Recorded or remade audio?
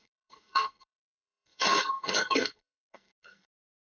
remade